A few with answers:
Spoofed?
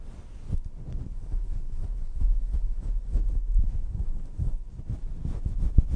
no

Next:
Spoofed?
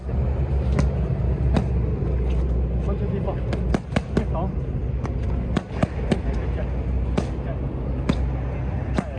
no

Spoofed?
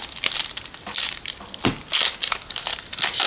no